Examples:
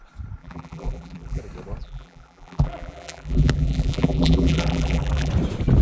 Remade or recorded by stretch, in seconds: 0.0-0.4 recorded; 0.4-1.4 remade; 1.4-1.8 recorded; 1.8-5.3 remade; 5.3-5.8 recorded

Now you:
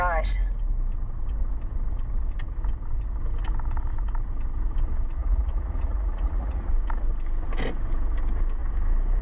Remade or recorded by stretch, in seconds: 0.0-5.2 recorded; 5.2-6.7 remade; 6.7-9.2 recorded

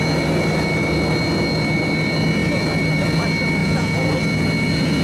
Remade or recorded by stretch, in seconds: 0.0-3.6 recorded; 3.6-4.1 remade; 4.1-5.0 recorded